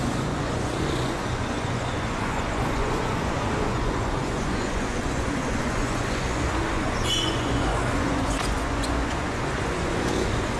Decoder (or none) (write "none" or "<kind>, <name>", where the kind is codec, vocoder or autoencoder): vocoder, Vocos